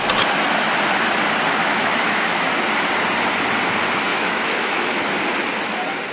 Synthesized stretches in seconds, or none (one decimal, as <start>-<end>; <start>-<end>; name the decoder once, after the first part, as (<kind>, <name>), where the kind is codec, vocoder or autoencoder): 1.6-2.5 (autoencoder, DAC-VAE); 4.1-5.0